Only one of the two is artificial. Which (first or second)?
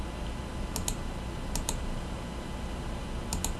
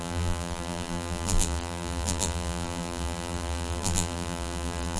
second